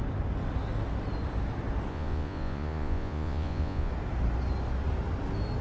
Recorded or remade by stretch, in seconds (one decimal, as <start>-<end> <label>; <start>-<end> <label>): 0.0-1.9 recorded; 1.9-3.9 remade; 3.9-5.6 recorded